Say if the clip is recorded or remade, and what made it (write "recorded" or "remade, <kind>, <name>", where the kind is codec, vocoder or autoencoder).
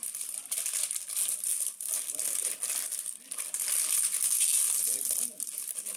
recorded